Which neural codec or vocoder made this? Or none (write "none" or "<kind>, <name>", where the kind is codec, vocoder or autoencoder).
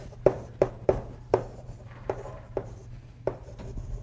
vocoder, BigVGAN v2